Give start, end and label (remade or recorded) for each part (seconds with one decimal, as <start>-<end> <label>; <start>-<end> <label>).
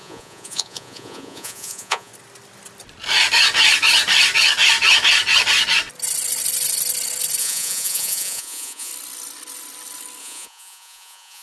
0.0-2.1 remade; 2.1-7.4 recorded; 7.4-8.9 remade; 8.9-10.2 recorded; 10.2-11.4 remade